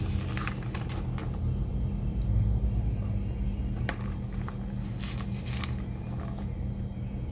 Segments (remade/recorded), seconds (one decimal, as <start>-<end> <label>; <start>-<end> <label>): 0.0-7.3 recorded

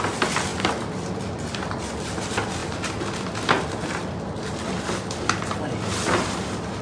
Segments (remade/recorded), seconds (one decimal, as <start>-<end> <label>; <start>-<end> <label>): 0.0-6.8 recorded